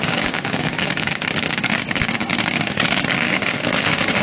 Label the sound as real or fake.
fake